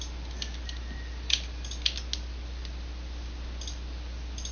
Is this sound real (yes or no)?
yes